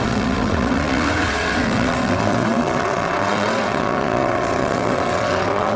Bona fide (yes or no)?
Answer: no